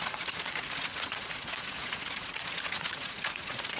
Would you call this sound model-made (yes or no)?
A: yes